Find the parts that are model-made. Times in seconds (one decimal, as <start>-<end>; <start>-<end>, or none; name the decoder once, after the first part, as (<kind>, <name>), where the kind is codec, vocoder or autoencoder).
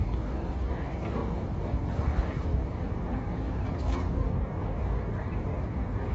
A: 0.0-6.1 (codec, DAC)